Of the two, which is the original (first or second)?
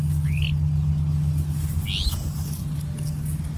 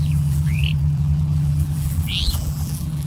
first